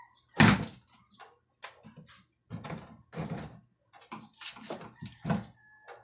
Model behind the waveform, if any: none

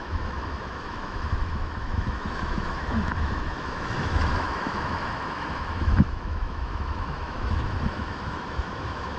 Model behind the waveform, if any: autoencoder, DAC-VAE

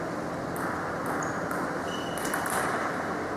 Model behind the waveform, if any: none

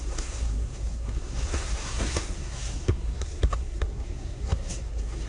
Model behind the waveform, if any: codec, SNAC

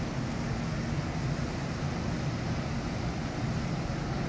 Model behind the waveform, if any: none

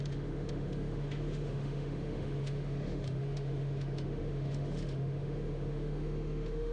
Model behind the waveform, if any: autoencoder, DAC-VAE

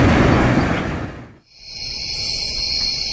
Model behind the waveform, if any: vocoder, Vocos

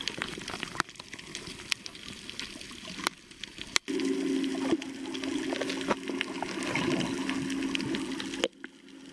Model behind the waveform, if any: none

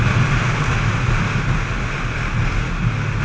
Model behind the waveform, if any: none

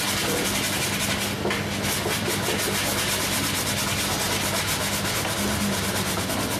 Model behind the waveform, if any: none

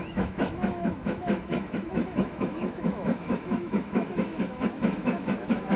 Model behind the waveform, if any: autoencoder, DAC-VAE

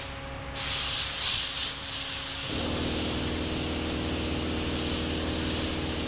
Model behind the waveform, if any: none